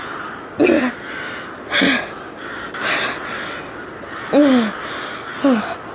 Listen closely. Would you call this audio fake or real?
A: real